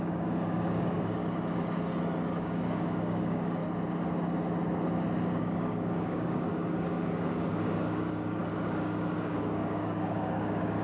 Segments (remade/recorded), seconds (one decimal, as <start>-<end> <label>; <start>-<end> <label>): 0.0-1.2 remade; 1.2-2.2 recorded; 2.2-3.6 remade; 3.6-5.3 recorded; 5.3-10.8 remade

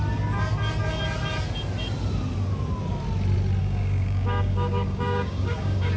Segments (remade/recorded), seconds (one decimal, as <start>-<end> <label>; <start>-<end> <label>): 0.0-3.6 recorded; 3.6-6.0 remade

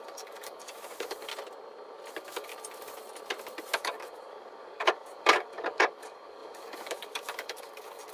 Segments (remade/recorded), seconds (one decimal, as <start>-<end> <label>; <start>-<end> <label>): 0.0-1.3 remade; 1.3-2.1 recorded; 2.1-2.5 remade; 2.5-3.8 recorded; 3.8-8.1 remade

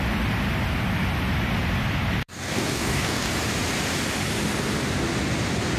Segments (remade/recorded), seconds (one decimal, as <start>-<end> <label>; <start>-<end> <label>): 0.0-2.2 recorded; 2.2-3.3 remade; 3.3-5.8 recorded

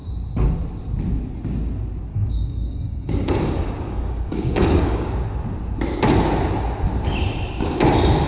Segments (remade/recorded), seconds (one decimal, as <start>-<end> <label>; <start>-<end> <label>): 0.0-2.1 recorded; 2.1-5.1 remade; 5.1-8.3 recorded

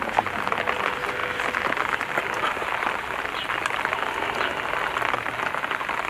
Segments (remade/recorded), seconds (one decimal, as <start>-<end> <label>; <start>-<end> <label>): 0.0-6.1 recorded